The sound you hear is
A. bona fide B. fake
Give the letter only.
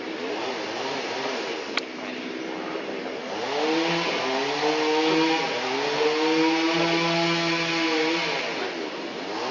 A